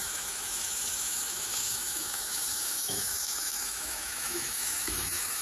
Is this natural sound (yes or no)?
no